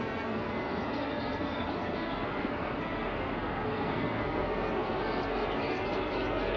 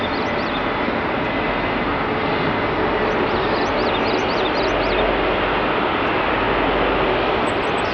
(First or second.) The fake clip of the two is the first